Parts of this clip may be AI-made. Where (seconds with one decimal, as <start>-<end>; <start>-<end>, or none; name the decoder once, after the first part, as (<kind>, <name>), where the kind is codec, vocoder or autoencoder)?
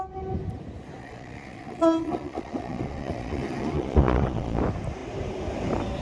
1.0-4.6 (vocoder, Vocos)